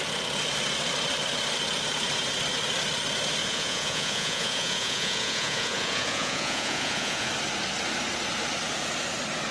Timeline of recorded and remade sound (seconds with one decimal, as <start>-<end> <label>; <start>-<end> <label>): 0.0-3.4 recorded; 3.4-7.3 remade; 7.3-9.5 recorded

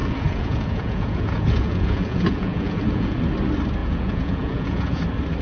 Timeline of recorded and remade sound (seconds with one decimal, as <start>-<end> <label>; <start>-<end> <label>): 0.0-3.2 remade; 3.2-3.8 recorded; 3.8-5.0 remade; 5.0-5.4 recorded